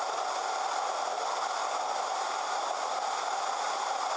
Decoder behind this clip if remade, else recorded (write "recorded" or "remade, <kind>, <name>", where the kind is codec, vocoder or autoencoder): recorded